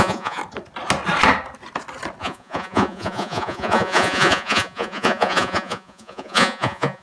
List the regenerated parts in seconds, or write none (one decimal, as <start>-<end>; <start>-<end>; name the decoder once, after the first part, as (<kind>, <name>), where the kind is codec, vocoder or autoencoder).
0.0-0.4 (vocoder, Vocos); 2.2-7.0